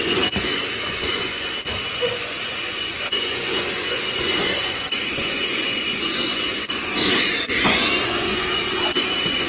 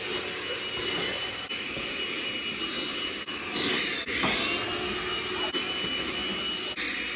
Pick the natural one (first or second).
second